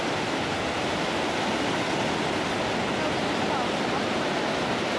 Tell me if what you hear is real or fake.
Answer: real